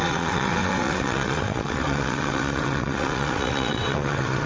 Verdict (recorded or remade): remade